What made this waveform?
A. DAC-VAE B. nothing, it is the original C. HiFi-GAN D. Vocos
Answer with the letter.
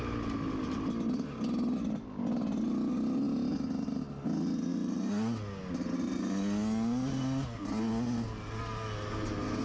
B